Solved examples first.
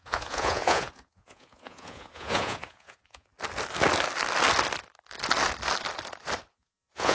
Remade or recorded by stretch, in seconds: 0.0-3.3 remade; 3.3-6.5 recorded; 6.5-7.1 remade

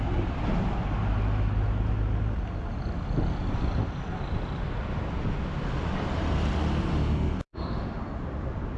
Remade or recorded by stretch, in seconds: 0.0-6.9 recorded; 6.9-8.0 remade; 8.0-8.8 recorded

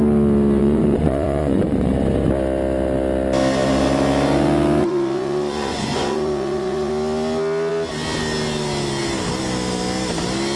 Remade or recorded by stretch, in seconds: 0.0-0.6 recorded; 0.6-1.9 remade; 1.9-4.8 recorded; 4.8-6.9 remade; 6.9-10.6 recorded

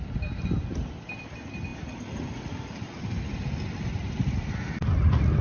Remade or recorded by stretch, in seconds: 0.0-5.4 recorded

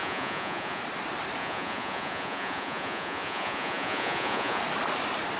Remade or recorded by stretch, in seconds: 0.0-0.8 remade; 0.8-1.4 recorded; 1.4-4.6 remade; 4.6-5.4 recorded